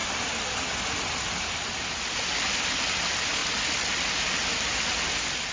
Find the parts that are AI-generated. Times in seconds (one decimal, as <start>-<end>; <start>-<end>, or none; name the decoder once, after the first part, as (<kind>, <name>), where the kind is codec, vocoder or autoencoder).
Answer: none